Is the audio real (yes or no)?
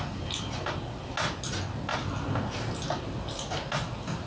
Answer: yes